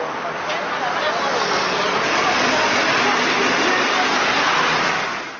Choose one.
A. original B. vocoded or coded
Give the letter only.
A